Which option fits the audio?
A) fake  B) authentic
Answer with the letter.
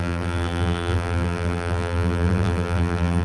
A